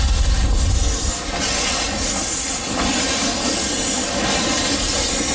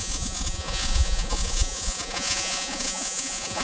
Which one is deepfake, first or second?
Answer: second